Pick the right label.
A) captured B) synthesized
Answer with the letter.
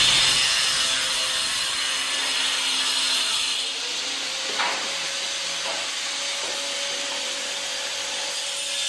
A